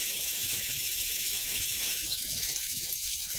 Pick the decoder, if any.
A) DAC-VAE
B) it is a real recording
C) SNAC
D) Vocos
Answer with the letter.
A